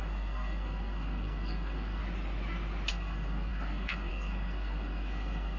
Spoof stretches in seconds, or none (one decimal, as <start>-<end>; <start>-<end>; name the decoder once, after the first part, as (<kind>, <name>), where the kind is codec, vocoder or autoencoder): 0.0-2.0 (codec, SNAC); 2.9-5.6